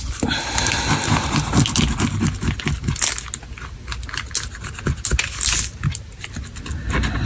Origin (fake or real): real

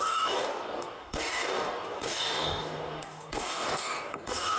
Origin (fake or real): fake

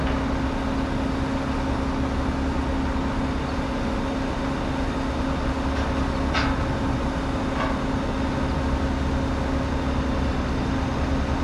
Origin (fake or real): real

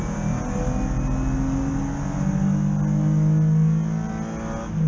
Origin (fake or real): real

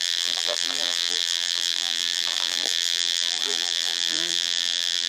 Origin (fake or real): fake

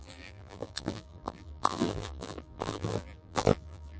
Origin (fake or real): fake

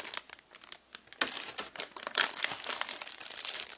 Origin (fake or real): real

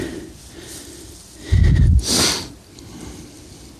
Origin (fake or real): fake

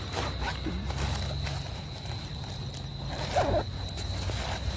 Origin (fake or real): real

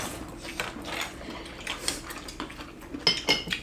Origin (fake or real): real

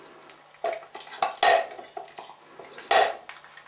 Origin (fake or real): real